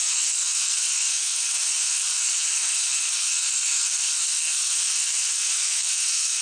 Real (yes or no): no